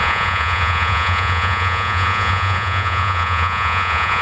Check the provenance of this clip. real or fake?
fake